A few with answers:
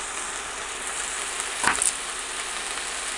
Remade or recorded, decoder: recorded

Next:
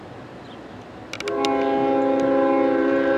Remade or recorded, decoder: recorded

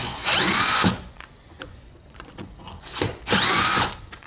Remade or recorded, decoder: remade, vocoder, Vocos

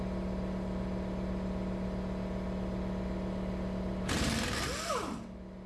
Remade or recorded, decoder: recorded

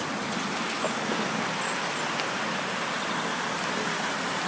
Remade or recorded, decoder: recorded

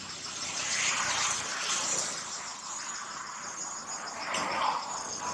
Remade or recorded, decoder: recorded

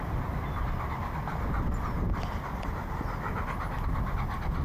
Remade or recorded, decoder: recorded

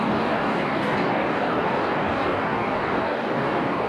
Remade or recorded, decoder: remade, codec, DAC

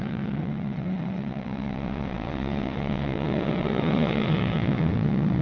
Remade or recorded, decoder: remade, vocoder, WaveNeXt